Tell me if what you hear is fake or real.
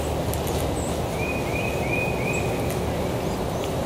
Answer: real